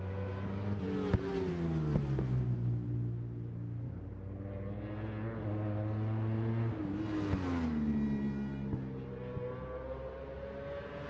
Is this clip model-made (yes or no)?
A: no